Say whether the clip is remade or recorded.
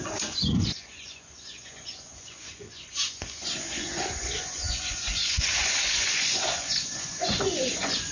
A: remade